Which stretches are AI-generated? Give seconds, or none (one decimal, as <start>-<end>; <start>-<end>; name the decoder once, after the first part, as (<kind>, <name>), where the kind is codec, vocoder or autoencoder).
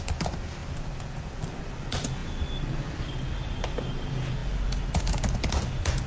none